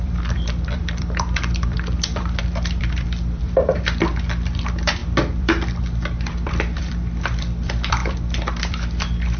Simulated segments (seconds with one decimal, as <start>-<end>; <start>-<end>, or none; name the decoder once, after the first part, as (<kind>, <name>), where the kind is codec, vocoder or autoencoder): 0.0-9.4 (vocoder, BigVGAN v2)